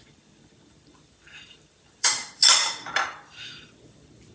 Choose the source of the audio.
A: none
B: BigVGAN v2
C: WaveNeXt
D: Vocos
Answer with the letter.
B